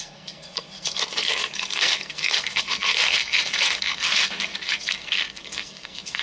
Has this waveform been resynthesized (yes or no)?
yes